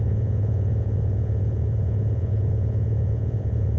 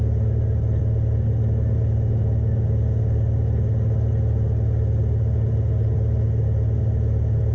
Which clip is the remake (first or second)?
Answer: first